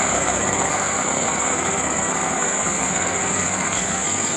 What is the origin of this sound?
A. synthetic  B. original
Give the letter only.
A